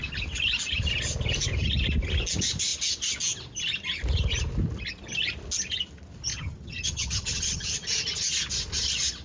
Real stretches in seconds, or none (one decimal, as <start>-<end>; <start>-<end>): 0.0-6.3; 7.7-9.2